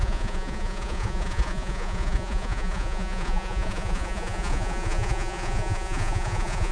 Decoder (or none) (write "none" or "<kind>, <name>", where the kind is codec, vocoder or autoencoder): vocoder, Vocos